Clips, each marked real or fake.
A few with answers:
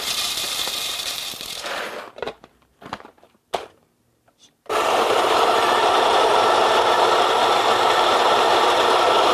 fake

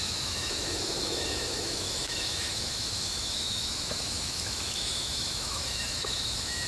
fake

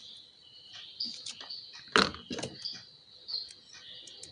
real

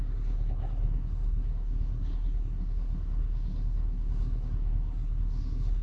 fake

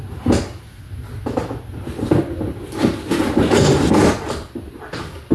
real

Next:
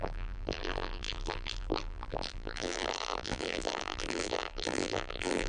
fake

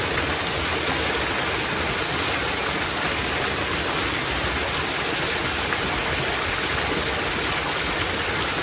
real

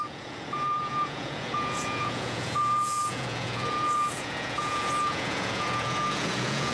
fake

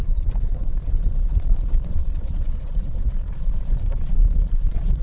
fake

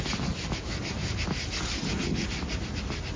real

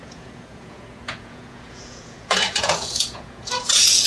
fake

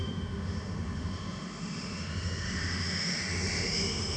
fake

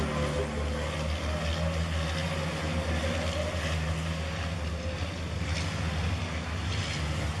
real